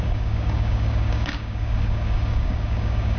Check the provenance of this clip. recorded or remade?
remade